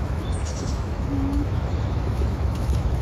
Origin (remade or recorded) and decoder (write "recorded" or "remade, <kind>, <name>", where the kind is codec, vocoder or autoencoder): remade, autoencoder, DAC-VAE